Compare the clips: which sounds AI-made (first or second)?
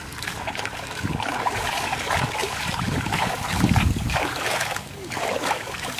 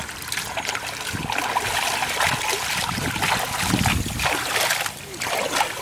first